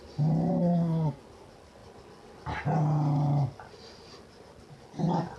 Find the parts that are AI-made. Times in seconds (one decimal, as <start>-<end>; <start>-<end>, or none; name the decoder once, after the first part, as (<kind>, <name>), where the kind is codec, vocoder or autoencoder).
0.6-1.2 (codec, SNAC)